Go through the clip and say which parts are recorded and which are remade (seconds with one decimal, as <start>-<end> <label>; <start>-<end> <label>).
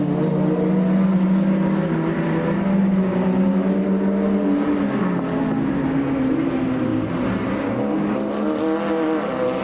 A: 0.0-9.6 recorded